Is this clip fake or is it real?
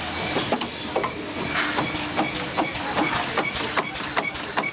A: real